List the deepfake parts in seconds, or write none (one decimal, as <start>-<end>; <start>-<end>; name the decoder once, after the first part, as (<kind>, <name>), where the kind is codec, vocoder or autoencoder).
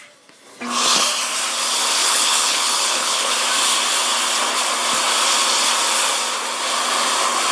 2.0-3.3 (codec, HILCodec)